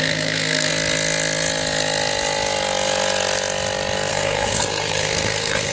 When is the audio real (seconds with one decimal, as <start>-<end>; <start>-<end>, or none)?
0.7-4.1